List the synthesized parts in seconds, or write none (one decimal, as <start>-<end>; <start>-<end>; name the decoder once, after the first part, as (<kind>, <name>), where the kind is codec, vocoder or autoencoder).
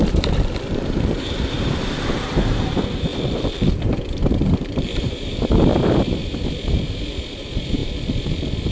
0.0-3.1 (vocoder, BigVGAN v2); 4.2-8.7